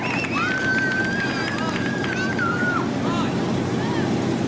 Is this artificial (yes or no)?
no